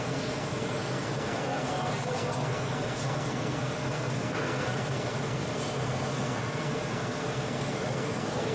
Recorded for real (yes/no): no